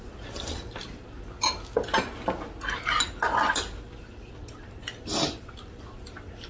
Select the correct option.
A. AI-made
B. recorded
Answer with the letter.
B